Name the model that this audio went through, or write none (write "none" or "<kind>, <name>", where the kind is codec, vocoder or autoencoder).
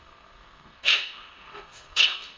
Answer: codec, SNAC